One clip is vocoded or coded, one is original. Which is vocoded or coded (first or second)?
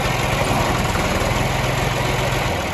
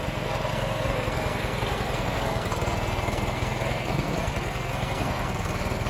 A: second